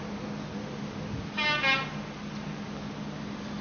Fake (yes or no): no